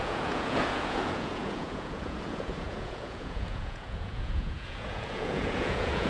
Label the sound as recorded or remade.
remade